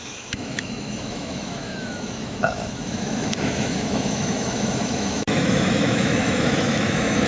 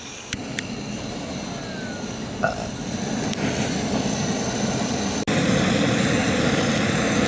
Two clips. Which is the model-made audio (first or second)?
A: first